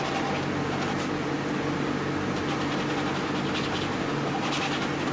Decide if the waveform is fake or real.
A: real